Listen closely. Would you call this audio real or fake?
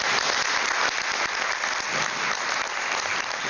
real